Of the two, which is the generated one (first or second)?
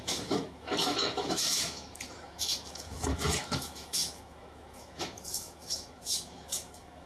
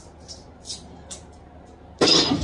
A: first